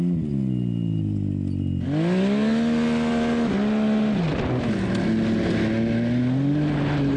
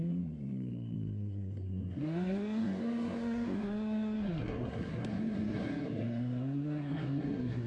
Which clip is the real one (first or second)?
first